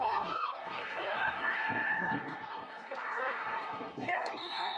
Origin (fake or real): fake